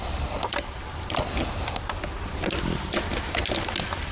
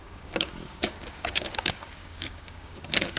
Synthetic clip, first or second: second